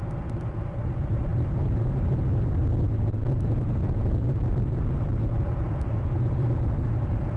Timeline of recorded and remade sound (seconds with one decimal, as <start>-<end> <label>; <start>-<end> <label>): 0.0-7.4 remade